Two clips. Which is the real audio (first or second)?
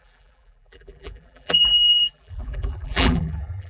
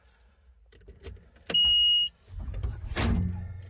second